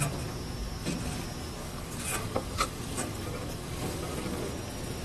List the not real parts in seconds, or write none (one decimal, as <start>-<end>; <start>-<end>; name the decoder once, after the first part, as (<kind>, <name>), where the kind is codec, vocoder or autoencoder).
1.6-4.5 (codec, DAC)